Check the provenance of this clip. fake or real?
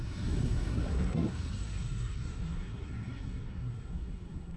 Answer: fake